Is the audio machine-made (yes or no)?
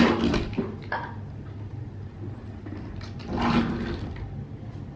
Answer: no